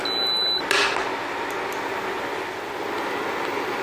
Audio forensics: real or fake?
real